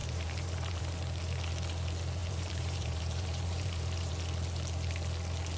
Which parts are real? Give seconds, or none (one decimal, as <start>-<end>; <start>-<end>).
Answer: 0.8-2.2; 4.1-5.6